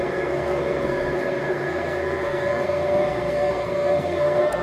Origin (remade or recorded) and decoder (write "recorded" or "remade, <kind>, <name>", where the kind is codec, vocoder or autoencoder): remade, codec, SNAC